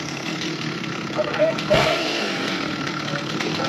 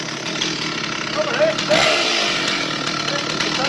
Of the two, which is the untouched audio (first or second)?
second